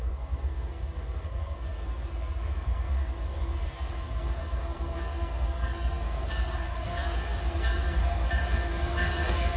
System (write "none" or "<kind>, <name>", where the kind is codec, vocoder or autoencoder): codec, SNAC